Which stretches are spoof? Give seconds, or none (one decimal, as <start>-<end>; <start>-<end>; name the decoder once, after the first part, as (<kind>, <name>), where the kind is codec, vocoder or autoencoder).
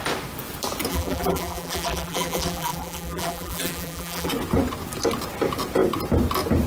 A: 0.9-4.3 (vocoder, BigVGAN v2)